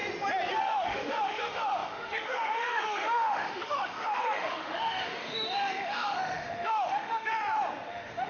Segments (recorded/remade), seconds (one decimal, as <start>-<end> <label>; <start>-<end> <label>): 0.0-0.6 recorded; 0.6-7.3 remade; 7.3-7.9 recorded; 7.9-8.3 remade